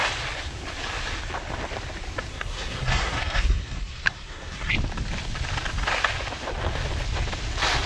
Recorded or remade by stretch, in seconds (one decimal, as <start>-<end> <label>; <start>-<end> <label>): 0.0-2.3 recorded; 2.3-4.7 remade; 4.7-7.9 recorded